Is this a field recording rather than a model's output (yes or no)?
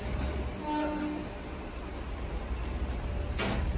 yes